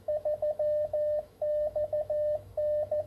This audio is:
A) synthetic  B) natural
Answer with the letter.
A